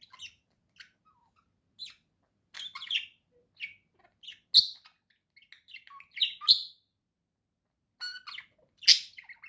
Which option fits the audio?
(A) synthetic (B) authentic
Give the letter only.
B